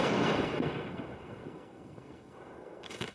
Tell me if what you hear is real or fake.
fake